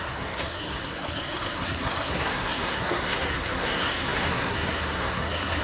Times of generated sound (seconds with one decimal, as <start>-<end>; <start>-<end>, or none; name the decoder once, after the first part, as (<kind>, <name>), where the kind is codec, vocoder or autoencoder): 0.0-5.6 (codec, SNAC)